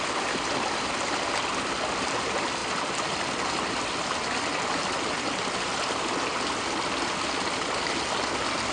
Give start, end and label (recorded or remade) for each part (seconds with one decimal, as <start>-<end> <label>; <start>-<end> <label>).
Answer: 0.0-8.7 recorded